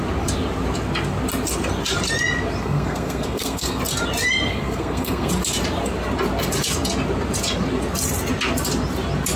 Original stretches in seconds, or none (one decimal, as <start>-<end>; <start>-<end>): 0.0-2.6; 3.8-4.5; 5.3-9.4